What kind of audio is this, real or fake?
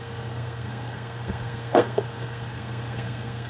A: fake